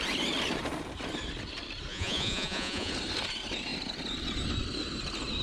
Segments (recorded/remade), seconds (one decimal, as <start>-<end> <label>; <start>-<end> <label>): 0.0-1.9 recorded; 1.9-2.9 remade; 2.9-5.4 recorded